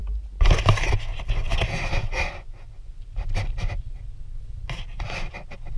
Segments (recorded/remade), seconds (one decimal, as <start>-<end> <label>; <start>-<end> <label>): 0.0-5.8 recorded